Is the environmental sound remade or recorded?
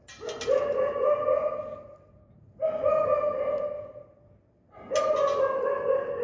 recorded